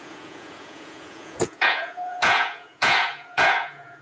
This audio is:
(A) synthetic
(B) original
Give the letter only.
A